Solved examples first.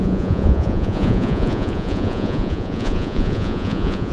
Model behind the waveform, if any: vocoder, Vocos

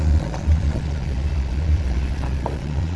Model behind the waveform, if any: vocoder, Vocos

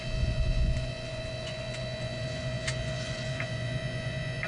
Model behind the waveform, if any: vocoder, Vocos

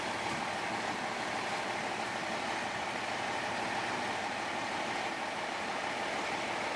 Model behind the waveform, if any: none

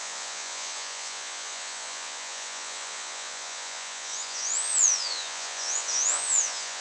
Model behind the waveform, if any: vocoder, Vocos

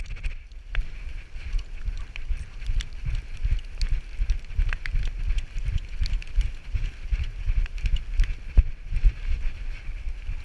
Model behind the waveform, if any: none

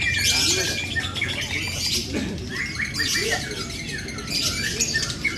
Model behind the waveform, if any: none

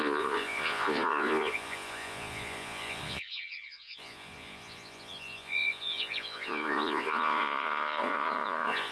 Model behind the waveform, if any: vocoder, Vocos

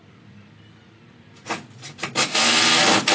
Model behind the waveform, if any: none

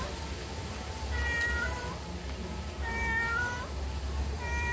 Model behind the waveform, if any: none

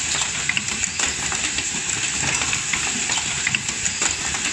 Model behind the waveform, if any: none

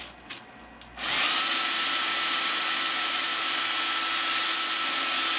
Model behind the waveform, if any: none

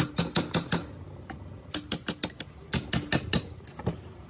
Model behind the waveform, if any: none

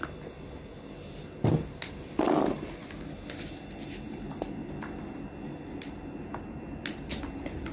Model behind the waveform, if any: none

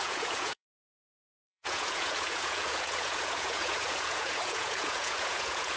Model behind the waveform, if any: vocoder, Vocos